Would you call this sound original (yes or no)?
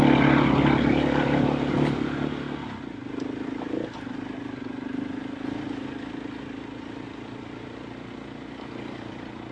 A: yes